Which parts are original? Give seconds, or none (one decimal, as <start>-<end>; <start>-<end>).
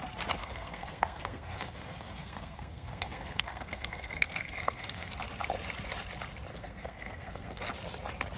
0.0-0.4; 5.1-6.5; 7.6-8.4